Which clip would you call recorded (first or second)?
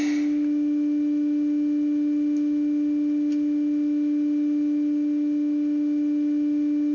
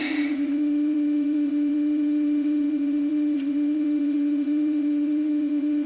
first